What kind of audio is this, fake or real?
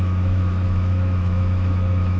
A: fake